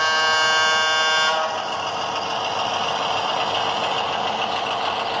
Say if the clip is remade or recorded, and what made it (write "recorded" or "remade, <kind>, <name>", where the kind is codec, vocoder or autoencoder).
recorded